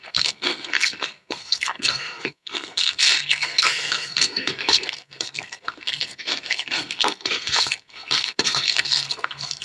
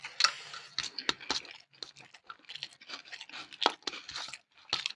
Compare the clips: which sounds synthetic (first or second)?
first